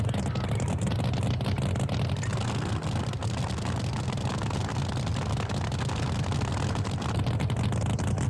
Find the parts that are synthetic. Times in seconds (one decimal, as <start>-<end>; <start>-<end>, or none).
none